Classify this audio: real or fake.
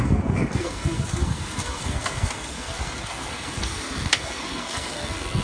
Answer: fake